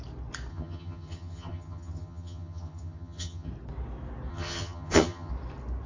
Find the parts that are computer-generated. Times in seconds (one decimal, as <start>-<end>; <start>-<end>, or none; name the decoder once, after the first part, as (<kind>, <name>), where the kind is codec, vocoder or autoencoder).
0.5-3.5 (vocoder, HiFi-GAN); 4.3-5.3